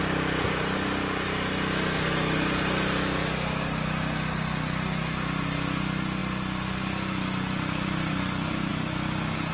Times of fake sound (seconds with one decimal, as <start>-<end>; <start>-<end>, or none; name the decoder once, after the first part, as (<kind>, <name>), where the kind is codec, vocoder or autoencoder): none